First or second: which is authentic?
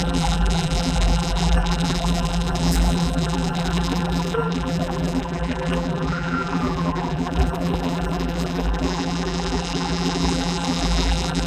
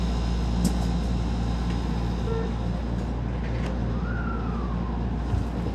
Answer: second